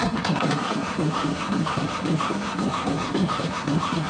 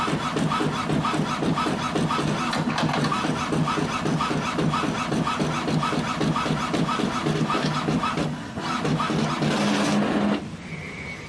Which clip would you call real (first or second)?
second